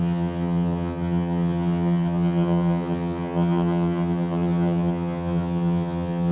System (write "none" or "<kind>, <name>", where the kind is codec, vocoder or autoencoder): vocoder, HiFi-GAN